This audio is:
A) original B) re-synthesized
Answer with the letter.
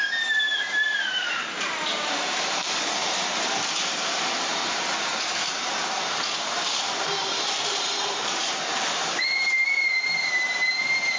B